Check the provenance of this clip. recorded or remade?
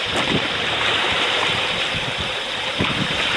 remade